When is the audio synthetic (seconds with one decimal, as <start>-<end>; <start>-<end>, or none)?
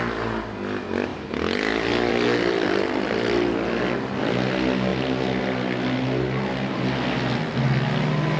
none